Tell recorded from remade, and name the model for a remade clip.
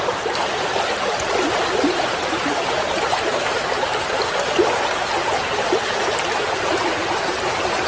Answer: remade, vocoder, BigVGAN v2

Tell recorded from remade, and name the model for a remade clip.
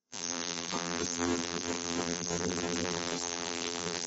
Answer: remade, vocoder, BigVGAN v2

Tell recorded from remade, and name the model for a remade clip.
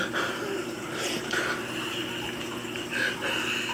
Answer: recorded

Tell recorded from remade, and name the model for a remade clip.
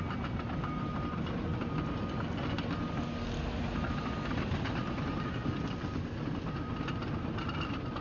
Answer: recorded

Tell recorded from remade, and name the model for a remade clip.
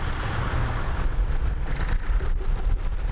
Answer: recorded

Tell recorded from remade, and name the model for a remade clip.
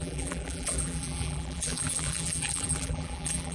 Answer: remade, vocoder, BigVGAN v2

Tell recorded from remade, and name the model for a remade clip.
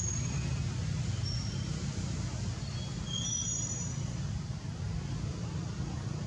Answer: recorded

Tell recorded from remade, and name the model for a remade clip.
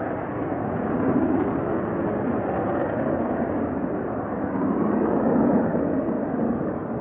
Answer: recorded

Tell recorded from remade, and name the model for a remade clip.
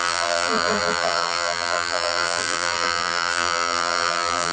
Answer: remade, vocoder, BigVGAN v2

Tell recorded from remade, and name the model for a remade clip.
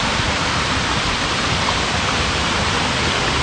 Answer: remade, vocoder, BigVGAN v2